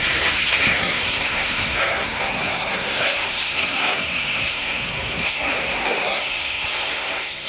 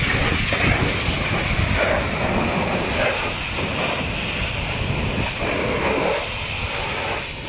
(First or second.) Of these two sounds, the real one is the second